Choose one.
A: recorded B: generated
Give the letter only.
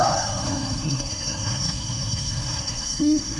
B